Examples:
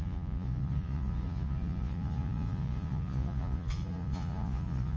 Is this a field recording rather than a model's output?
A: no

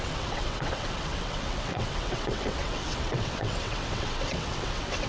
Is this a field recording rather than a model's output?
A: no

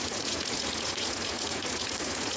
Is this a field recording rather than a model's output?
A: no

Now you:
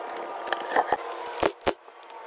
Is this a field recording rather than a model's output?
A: yes